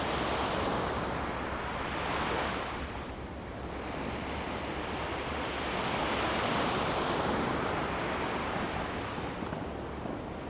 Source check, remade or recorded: recorded